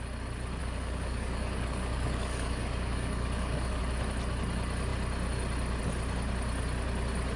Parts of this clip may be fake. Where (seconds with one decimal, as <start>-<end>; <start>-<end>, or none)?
0.6-3.8